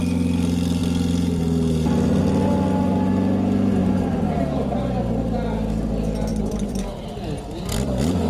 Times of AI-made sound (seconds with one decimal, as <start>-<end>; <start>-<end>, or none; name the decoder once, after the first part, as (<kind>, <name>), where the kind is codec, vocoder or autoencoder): 3.8-4.4 (vocoder, BigVGAN v2); 6.3-6.9